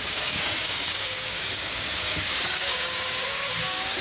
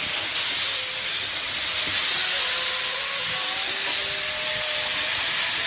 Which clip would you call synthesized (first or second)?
first